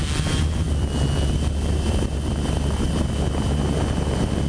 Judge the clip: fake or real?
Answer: real